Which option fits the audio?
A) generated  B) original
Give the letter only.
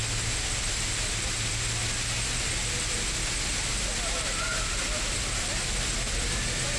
B